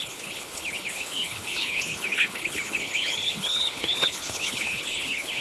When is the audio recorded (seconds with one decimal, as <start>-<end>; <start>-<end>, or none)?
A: none